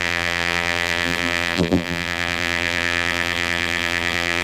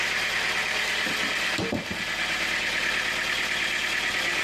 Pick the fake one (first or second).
first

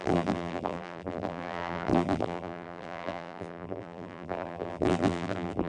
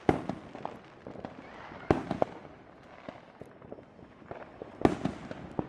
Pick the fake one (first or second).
first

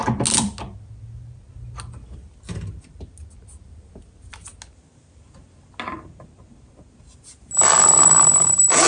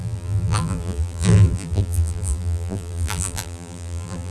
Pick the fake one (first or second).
second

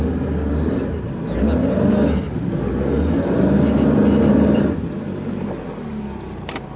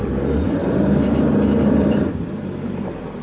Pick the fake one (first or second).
second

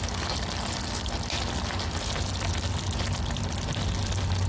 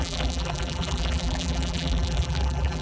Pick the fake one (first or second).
second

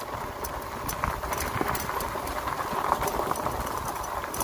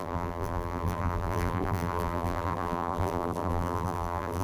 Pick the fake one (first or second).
second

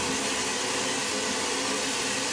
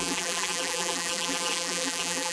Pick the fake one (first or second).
second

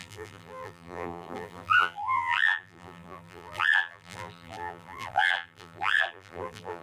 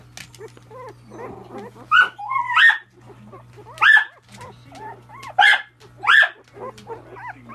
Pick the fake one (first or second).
first